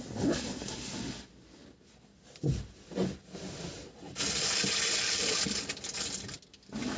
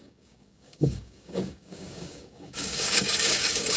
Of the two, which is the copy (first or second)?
second